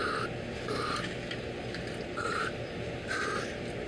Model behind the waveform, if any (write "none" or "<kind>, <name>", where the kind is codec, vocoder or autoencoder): none